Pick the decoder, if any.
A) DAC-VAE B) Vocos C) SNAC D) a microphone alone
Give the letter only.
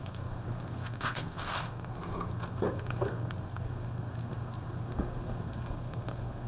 C